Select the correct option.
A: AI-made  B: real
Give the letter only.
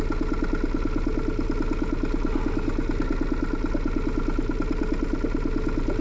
B